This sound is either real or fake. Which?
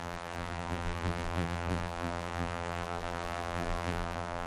fake